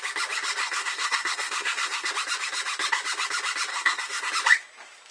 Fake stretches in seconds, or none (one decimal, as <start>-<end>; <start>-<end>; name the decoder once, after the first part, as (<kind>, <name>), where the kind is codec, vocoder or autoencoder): 0.6-2.1 (codec, SNAC); 3.7-4.3

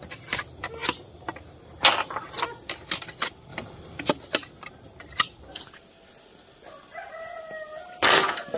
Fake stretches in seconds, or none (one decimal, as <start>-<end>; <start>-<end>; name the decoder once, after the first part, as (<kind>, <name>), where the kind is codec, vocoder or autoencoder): 3.5-4.1 (vocoder, BigVGAN v2)

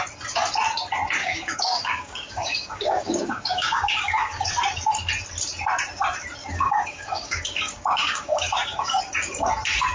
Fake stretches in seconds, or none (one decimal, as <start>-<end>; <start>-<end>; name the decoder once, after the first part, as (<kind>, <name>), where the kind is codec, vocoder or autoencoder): 1.2-4.5 (codec, DAC); 6.4-9.0

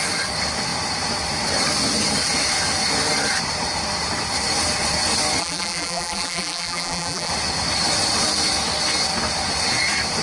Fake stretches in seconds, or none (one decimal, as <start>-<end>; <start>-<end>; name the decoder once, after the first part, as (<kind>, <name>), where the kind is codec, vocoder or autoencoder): 5.4-7.3 (vocoder, BigVGAN v2)

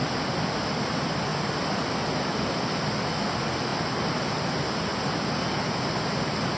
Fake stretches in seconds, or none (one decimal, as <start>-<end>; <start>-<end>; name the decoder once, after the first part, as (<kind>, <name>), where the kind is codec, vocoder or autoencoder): none

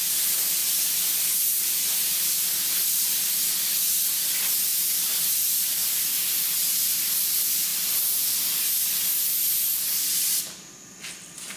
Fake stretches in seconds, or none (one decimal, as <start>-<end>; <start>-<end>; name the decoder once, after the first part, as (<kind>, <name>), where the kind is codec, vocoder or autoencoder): 0.0-0.6 (vocoder, BigVGAN v2); 2.7-11.6

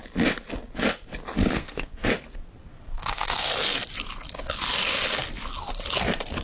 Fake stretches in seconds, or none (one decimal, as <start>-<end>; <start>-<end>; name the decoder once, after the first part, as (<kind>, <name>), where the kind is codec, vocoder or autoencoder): 1.4-2.1 (codec, SNAC); 2.7-3.5

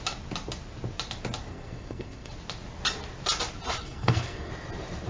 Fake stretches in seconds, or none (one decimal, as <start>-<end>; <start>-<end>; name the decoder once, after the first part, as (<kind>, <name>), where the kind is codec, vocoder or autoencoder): 1.5-2.3 (codec, SNAC); 3.8-4.5